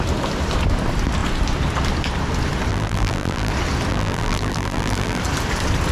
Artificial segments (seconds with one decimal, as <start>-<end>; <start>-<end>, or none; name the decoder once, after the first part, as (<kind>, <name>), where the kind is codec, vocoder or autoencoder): 2.7-3.5 (vocoder, BigVGAN v2); 3.9-5.2